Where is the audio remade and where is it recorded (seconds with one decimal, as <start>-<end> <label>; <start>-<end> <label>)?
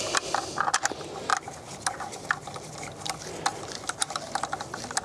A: 0.0-5.0 recorded